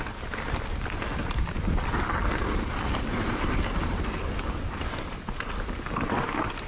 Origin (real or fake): real